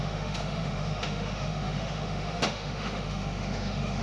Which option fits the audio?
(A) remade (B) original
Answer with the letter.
A